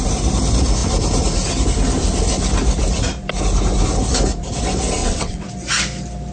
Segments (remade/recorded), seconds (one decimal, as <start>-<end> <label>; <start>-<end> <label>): 0.0-5.0 recorded; 5.0-5.5 remade; 5.5-6.3 recorded